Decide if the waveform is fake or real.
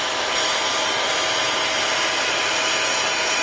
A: real